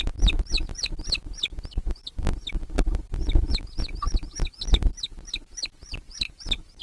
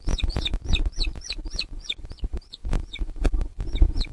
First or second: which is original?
first